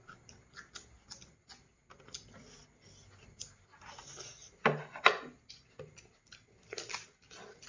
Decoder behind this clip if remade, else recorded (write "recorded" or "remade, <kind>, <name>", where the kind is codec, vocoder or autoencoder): recorded